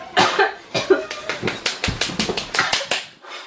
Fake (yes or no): no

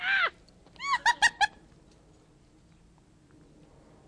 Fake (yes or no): no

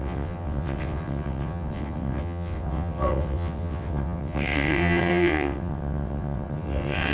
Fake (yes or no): yes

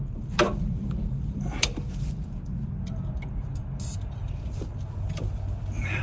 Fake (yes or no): no